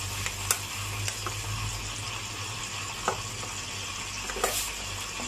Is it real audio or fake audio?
real